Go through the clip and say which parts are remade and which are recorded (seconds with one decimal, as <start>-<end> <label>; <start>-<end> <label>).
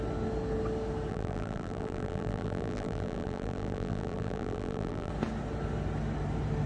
0.0-1.1 recorded; 1.1-5.1 remade; 5.1-6.7 recorded